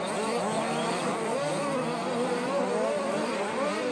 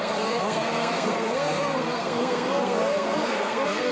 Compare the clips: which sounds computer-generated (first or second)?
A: second